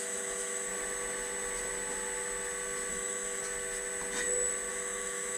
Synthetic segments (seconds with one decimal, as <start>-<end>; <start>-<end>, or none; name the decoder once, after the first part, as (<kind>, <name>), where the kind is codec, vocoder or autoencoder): 0.0-0.7 (autoencoder, DAC-VAE); 2.9-3.4; 4.7-5.4